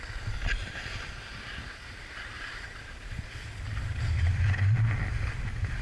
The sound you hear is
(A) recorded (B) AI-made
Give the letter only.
B